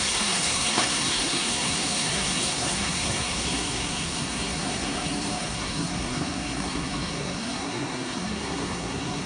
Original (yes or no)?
no